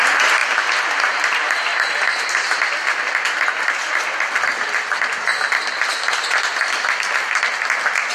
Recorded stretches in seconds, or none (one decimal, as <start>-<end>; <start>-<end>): 0.4-1.0; 1.7-4.0; 5.3-6.1; 6.5-8.1